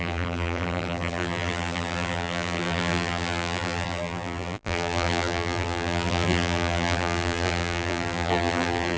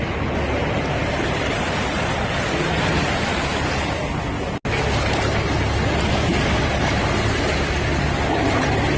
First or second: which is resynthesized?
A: first